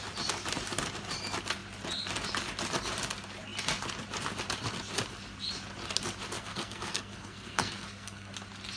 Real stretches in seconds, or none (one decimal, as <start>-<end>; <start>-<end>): 0.0-6.4; 8.3-8.8